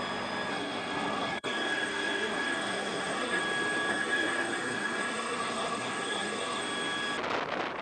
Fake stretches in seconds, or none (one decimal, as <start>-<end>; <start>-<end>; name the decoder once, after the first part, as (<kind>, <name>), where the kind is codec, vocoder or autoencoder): 0.5-3.4 (codec, SNAC); 3.9-6.6

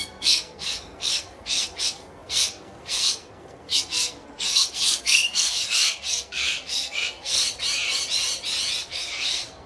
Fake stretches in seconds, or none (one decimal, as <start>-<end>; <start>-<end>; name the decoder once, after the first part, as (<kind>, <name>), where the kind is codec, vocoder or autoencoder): 0.0-7.4 (codec, SNAC); 8.8-9.7